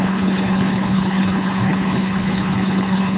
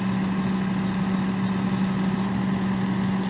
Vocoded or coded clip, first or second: first